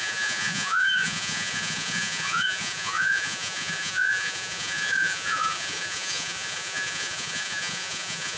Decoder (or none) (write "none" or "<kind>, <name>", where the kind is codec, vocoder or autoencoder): vocoder, Vocos